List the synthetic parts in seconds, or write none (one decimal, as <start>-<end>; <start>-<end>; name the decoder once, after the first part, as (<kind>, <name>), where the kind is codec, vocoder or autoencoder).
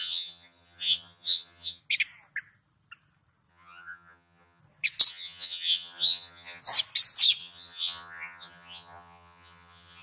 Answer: 0.0-1.8 (vocoder, HiFi-GAN); 3.5-4.6; 5.1-6.6; 7.4-10.0